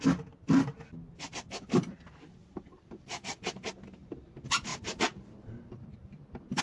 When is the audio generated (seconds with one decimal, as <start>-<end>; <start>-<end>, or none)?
2.4-3.7; 4.7-6.6